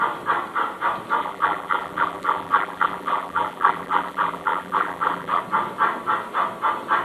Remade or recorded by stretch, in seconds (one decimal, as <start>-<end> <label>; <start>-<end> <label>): 0.0-1.2 recorded; 1.2-5.4 remade; 5.4-7.0 recorded